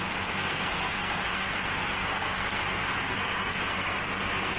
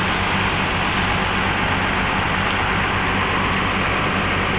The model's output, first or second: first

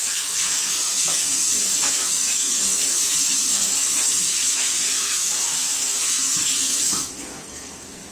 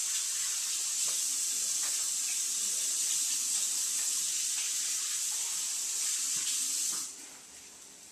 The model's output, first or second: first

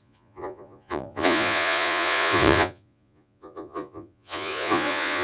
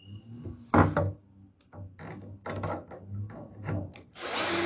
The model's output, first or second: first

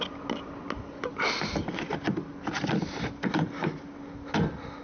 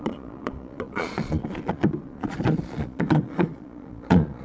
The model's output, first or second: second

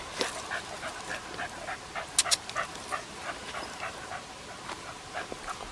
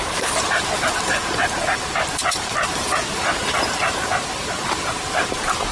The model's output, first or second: second